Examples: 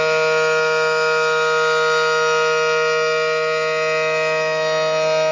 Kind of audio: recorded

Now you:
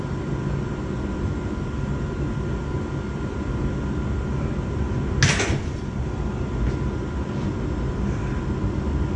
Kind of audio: recorded